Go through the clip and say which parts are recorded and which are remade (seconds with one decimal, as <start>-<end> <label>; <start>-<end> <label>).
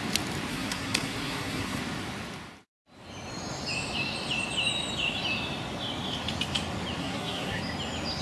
0.0-0.5 recorded; 0.5-1.8 remade; 1.8-7.0 recorded; 7.0-7.6 remade; 7.6-8.2 recorded